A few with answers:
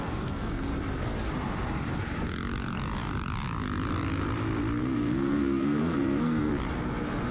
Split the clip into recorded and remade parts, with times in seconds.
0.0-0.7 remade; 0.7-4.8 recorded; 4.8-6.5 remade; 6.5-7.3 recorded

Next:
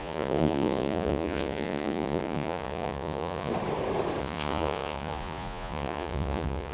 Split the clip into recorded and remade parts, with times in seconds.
0.0-3.5 remade; 3.5-4.2 recorded; 4.2-6.7 remade

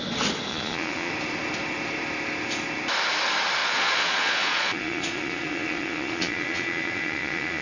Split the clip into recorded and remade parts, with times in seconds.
0.0-0.5 recorded; 0.5-1.1 remade; 1.1-3.6 recorded; 3.6-7.6 remade